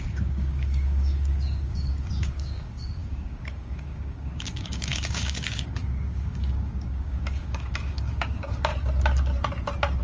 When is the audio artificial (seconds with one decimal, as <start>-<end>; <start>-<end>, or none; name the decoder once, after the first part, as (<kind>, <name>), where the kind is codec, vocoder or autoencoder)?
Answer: 0.0-8.7 (codec, DAC)